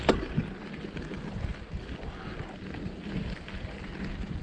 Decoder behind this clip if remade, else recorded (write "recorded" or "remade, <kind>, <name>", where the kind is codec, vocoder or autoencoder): recorded